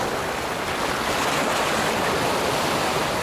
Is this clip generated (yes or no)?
no